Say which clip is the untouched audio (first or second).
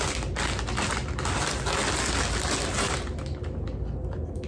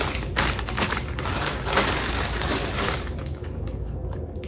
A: first